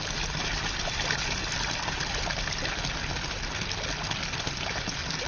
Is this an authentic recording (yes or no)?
yes